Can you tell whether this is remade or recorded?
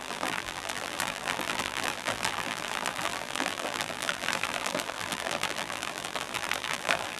remade